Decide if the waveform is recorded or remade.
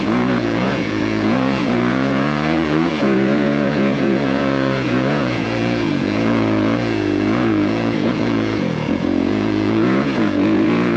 remade